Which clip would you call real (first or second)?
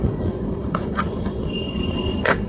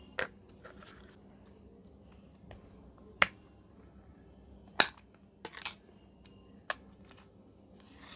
second